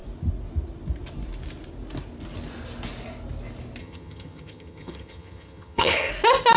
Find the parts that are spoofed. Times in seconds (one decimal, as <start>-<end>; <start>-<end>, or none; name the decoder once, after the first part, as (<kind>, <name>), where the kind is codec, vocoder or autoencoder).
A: 3.8-6.1 (vocoder, HiFi-GAN)